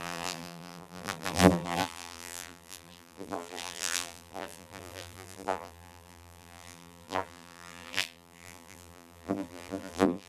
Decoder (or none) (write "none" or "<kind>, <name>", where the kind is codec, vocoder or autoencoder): vocoder, BigVGAN v2